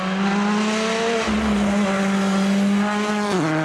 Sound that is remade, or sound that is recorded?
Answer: recorded